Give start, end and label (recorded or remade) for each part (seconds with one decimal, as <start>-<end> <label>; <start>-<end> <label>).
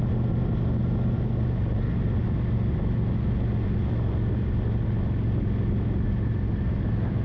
0.0-7.2 recorded